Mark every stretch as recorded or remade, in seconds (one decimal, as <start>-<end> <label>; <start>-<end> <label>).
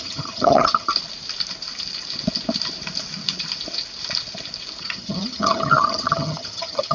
0.0-0.9 remade; 0.9-4.8 recorded; 4.8-6.9 remade